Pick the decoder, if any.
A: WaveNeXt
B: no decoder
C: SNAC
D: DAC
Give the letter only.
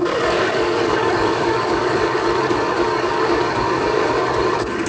D